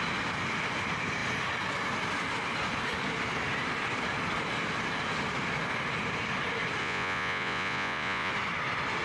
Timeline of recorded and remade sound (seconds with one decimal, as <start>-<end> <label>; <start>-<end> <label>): 0.0-6.8 recorded; 6.8-8.3 remade; 8.3-9.0 recorded